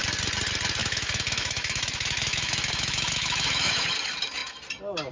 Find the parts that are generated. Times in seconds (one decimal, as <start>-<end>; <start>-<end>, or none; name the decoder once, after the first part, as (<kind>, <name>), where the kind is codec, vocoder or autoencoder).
0.8-3.9 (autoencoder, DAC-VAE)